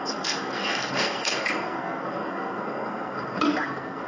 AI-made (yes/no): yes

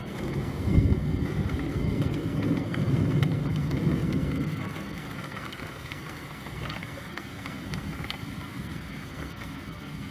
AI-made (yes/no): yes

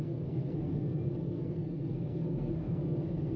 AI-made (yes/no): yes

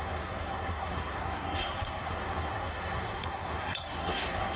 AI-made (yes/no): yes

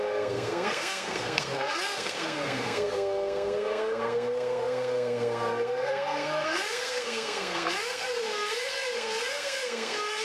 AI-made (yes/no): yes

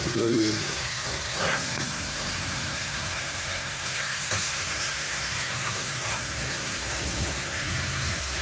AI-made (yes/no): yes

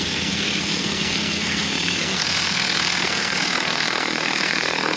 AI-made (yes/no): yes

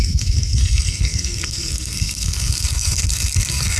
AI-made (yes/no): yes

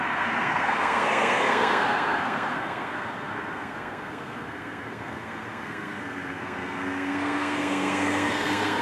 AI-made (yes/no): yes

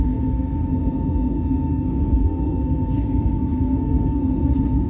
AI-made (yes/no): yes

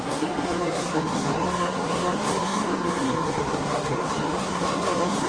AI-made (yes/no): yes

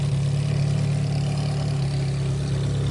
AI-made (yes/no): no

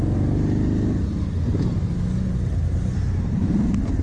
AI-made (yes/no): no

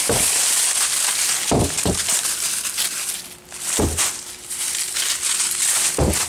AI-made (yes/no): no